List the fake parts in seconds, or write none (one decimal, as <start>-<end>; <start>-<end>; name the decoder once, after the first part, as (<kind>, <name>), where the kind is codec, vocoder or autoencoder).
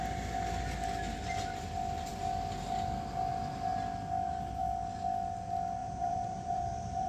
5.8-7.1 (vocoder, BigVGAN v2)